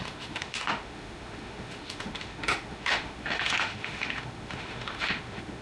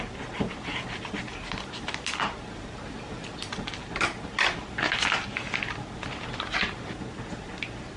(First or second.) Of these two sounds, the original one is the second